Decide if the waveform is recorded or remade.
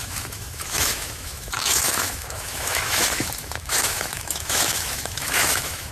remade